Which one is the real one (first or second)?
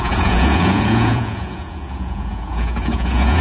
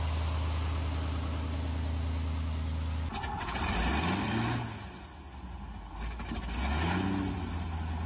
second